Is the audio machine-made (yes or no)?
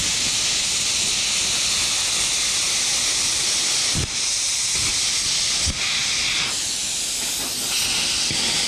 no